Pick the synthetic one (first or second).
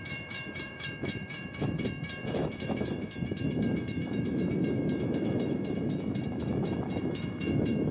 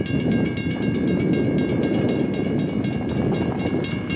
first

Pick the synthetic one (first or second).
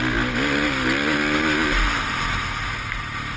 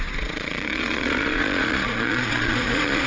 second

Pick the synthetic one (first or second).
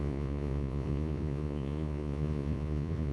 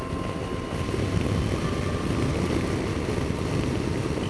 first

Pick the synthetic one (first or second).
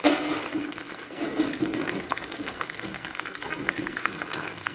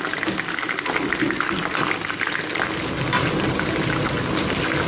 first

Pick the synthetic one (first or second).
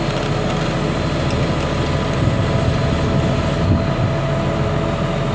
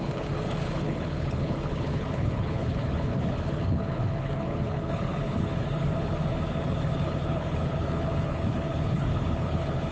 second